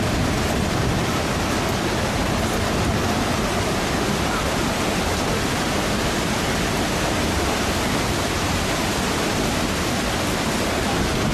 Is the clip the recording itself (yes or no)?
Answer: yes